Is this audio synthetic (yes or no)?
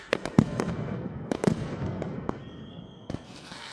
yes